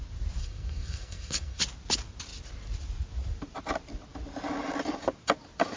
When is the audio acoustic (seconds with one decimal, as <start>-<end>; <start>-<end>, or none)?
0.0-0.4; 1.6-5.8